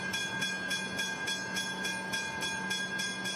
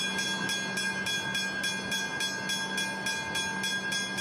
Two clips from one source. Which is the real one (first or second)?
second